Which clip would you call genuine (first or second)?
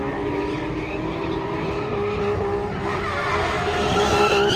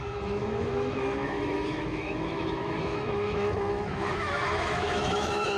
first